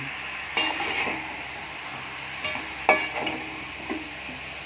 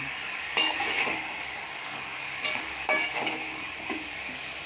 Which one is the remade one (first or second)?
second